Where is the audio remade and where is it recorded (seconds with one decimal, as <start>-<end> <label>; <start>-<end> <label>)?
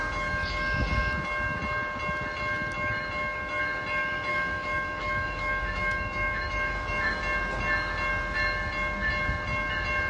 0.0-4.3 recorded; 4.3-7.2 remade; 7.2-10.1 recorded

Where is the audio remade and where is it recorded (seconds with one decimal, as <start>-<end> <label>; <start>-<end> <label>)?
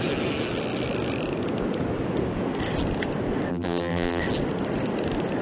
0.0-3.5 recorded; 3.5-4.2 remade; 4.2-5.4 recorded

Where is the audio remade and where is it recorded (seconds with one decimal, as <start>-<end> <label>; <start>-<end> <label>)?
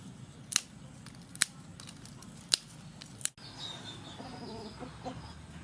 0.0-5.6 recorded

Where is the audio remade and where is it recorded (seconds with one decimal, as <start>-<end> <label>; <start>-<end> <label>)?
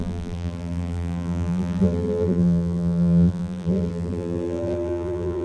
0.0-5.4 remade